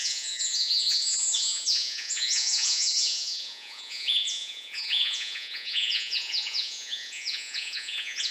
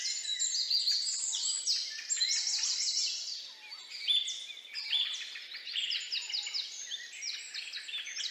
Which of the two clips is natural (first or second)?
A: second